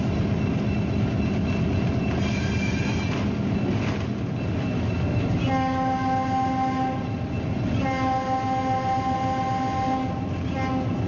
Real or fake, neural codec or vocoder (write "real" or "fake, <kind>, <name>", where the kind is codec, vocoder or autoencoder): real